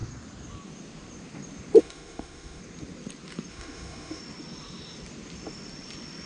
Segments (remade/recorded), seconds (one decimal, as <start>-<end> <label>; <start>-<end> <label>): 0.0-1.8 recorded; 1.8-2.6 remade; 2.6-3.5 recorded; 3.5-4.2 remade; 4.2-6.3 recorded

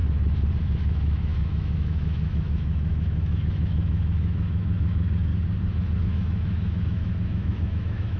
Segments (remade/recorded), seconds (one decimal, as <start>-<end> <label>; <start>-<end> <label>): 0.0-0.6 recorded; 0.6-5.3 remade; 5.3-6.0 recorded; 6.0-8.2 remade

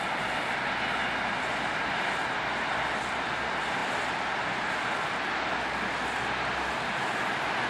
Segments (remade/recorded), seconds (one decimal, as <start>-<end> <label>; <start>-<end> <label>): 0.0-7.7 recorded

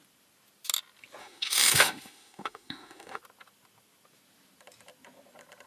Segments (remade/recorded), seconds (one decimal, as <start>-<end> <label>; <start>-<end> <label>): 0.0-1.2 recorded; 1.2-3.2 remade; 3.2-5.7 recorded

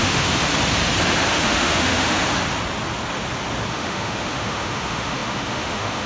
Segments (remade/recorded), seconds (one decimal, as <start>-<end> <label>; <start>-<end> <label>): 0.0-0.5 remade; 0.5-1.3 recorded; 1.3-2.2 remade; 2.2-3.7 recorded; 3.7-6.1 remade

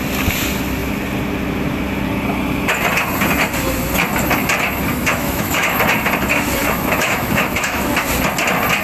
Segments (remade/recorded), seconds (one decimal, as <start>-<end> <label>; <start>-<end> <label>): 0.0-5.0 recorded; 5.0-5.8 remade; 5.8-6.6 recorded; 6.6-7.9 remade; 7.9-8.8 recorded

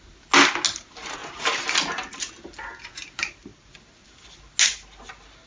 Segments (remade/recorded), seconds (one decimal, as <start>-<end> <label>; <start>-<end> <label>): 0.0-5.5 recorded

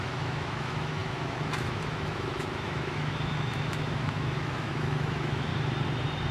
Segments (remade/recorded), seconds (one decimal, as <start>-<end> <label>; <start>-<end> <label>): 0.0-5.5 remade; 5.5-6.3 recorded